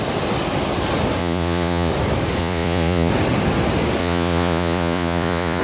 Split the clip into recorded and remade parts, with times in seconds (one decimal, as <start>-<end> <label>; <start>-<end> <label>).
0.0-1.2 recorded; 1.2-1.9 remade; 1.9-2.4 recorded; 2.4-3.1 remade; 3.1-4.0 recorded; 4.0-5.6 remade